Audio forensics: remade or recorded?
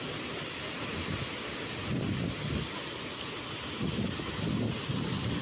recorded